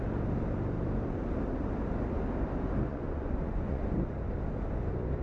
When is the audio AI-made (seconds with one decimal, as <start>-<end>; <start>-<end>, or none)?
2.9-3.9